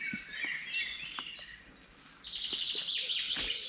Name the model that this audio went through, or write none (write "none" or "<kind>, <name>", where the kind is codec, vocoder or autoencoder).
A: none